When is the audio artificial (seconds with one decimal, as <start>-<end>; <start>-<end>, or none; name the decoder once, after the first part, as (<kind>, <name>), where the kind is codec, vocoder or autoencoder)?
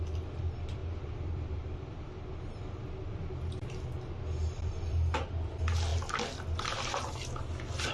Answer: 0.8-2.2 (vocoder, BigVGAN v2); 4.4-5.5